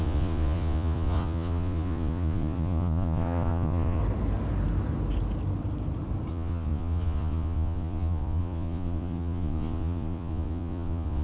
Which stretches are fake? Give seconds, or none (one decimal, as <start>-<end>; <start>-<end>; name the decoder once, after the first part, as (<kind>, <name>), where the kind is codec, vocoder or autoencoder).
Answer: 0.0-4.0 (vocoder, Vocos); 6.3-11.2